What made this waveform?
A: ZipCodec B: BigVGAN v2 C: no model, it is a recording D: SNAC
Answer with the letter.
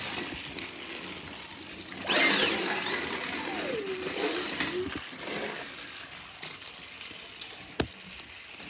C